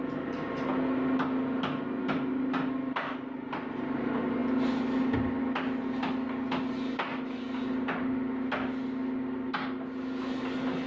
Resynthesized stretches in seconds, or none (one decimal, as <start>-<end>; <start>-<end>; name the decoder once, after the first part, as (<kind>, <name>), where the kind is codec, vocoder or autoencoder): none